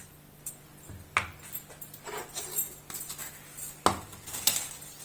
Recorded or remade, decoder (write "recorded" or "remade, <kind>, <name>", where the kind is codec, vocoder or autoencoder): recorded